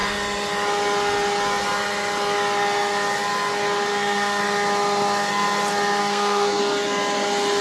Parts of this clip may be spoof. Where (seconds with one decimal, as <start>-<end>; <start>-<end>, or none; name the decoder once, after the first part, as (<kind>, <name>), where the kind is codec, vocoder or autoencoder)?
3.9-4.4 (codec, SNAC); 6.0-6.6